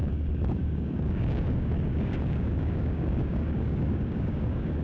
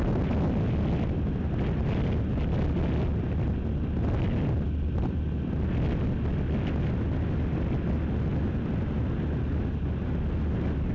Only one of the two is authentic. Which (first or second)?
second